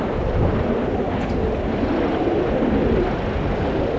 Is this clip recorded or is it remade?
recorded